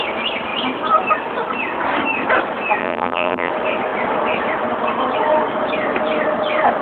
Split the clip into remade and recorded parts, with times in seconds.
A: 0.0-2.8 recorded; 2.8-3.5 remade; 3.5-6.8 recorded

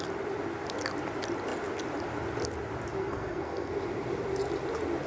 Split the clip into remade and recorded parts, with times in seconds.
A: 0.0-3.0 recorded; 3.0-3.7 remade; 3.7-5.1 recorded

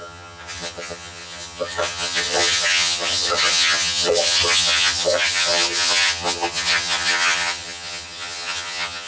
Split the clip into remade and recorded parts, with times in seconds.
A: 0.0-9.1 remade

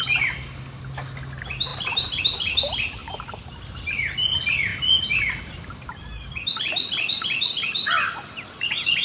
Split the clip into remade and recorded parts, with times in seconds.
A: 0.0-1.7 recorded; 1.7-2.2 remade; 2.2-3.0 recorded; 3.0-3.8 remade; 3.8-9.0 recorded

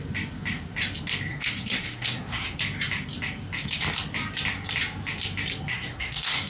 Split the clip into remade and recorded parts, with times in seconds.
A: 0.0-1.3 recorded; 1.3-2.6 remade; 2.6-5.7 recorded; 5.7-6.5 remade